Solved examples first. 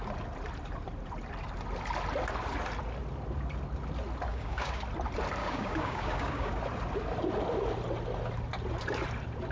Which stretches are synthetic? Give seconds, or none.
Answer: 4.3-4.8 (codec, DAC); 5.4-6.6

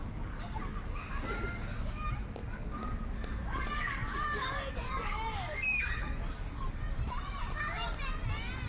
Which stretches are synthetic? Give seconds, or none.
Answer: 0.0-2.0 (codec, DAC); 2.4-6.8

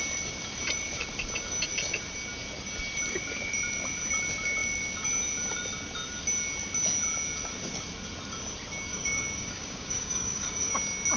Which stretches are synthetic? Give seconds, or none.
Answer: 8.9-10.7 (codec, DAC)

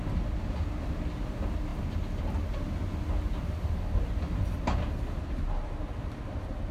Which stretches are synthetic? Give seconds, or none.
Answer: none

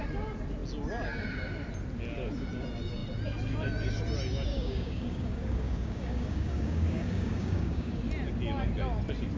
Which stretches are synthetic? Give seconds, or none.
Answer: 4.5-8.0 (codec, DAC)